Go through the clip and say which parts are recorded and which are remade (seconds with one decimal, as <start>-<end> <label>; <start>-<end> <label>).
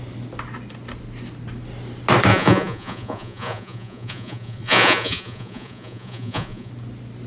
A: 0.0-2.3 recorded; 2.3-6.7 remade; 6.7-7.3 recorded